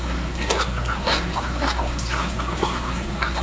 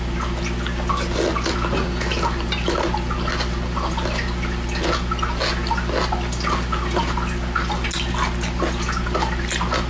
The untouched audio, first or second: second